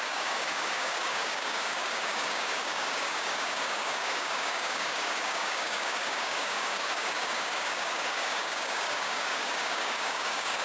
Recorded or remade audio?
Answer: remade